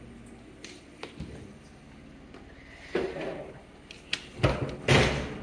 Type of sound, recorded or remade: recorded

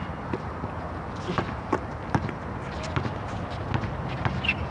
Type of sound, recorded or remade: recorded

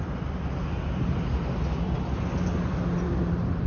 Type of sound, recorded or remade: recorded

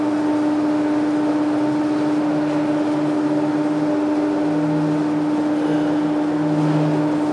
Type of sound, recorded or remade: recorded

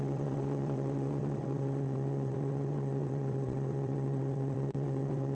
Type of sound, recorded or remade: remade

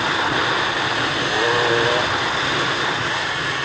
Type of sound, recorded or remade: recorded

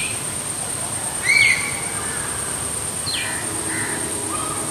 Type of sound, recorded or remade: recorded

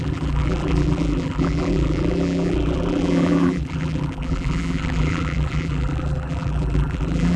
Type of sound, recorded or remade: remade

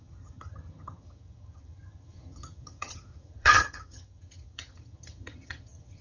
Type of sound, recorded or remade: remade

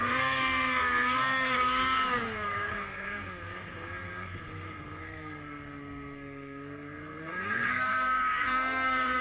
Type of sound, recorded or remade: remade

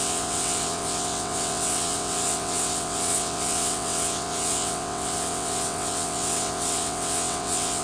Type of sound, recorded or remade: remade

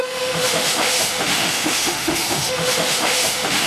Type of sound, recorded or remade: remade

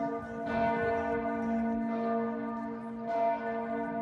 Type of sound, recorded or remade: recorded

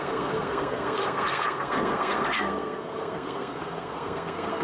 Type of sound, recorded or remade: remade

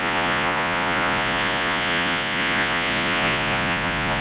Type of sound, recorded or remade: remade